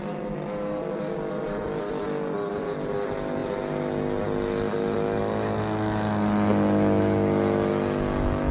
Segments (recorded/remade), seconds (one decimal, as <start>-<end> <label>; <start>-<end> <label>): 0.0-8.5 recorded

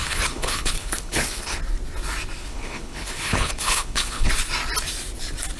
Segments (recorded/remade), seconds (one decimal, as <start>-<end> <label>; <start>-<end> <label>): 0.0-1.6 remade; 1.6-2.4 recorded; 2.4-4.3 remade; 4.3-5.6 recorded

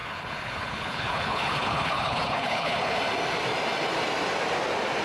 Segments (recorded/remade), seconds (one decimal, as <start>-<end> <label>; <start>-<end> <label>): 0.0-3.0 remade; 3.0-5.0 recorded

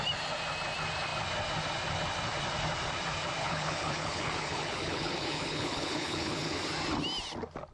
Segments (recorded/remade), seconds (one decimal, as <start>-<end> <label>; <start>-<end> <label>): 0.0-3.4 recorded; 3.4-6.6 remade; 6.6-7.7 recorded

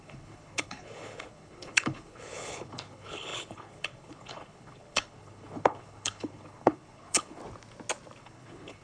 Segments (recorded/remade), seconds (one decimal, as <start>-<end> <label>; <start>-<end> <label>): 0.0-7.4 remade; 7.4-8.2 recorded; 8.2-8.8 remade